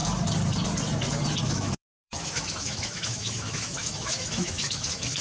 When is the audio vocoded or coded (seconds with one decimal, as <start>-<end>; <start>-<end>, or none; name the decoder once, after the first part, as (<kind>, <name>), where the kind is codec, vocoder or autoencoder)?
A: 1.4-5.2 (autoencoder, DAC-VAE)